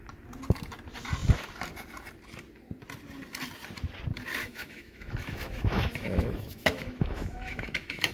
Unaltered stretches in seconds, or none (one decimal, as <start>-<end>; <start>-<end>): 0.0-4.4